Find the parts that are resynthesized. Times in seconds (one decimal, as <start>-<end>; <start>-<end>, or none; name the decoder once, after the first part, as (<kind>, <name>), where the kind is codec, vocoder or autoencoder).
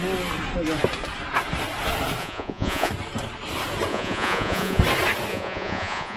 2.2-2.9 (vocoder, Vocos); 3.9-4.8; 5.3-6.2